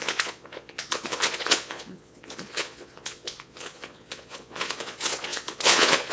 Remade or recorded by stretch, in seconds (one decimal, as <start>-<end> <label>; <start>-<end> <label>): 0.0-6.1 remade